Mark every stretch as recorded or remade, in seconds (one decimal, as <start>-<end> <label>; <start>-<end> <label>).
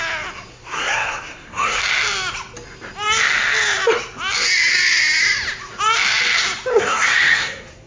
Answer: 0.0-0.5 recorded; 0.5-1.8 remade; 1.8-6.7 recorded; 6.7-7.9 remade